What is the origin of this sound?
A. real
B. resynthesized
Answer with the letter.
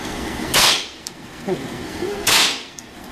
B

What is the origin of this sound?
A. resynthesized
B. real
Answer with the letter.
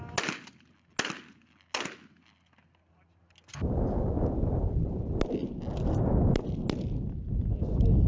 B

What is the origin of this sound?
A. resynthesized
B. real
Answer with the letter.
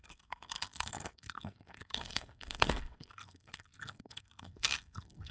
A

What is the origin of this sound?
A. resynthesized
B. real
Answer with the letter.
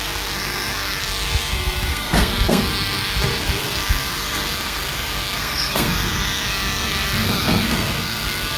A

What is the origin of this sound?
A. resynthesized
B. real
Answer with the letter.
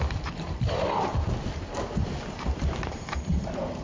A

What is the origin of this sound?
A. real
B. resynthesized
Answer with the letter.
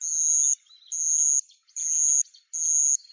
A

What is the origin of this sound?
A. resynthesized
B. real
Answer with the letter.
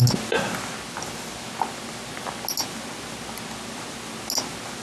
B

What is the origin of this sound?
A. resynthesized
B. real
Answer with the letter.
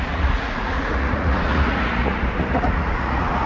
A